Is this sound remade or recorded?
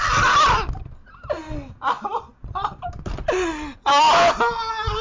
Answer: recorded